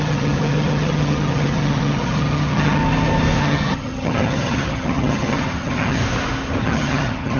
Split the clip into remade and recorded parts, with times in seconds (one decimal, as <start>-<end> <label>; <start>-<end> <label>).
0.0-2.8 remade; 2.8-3.4 recorded; 3.4-6.0 remade; 6.0-6.6 recorded; 6.6-7.4 remade